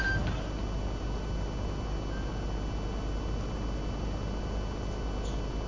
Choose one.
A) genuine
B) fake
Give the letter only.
A